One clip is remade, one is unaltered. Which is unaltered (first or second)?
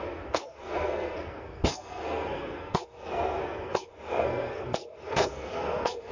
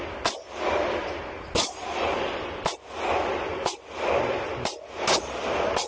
second